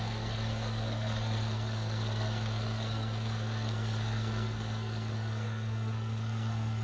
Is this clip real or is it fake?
fake